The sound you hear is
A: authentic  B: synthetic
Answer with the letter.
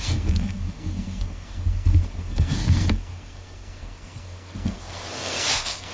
B